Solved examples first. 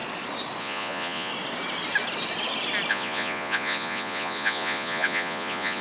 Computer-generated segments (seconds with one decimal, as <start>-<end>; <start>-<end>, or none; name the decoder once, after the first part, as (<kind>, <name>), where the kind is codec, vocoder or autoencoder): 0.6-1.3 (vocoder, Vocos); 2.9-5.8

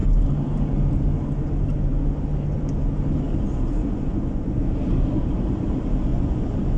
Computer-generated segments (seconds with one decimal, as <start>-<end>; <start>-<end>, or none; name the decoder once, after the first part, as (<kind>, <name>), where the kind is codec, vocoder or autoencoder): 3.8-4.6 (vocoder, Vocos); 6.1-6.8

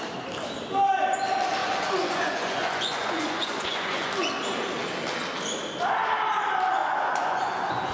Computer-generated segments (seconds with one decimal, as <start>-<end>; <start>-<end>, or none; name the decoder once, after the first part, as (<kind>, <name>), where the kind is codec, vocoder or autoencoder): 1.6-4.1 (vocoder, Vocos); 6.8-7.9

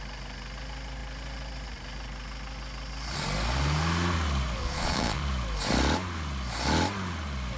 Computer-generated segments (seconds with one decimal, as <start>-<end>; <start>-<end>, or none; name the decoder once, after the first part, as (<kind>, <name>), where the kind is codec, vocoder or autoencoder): 4.6-5.2 (vocoder, Vocos)